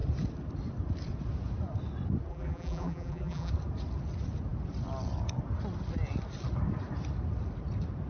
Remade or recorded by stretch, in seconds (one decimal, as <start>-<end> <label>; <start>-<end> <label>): 0.0-2.3 recorded; 2.3-3.5 remade; 3.5-8.1 recorded